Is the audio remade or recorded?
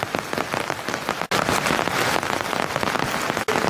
recorded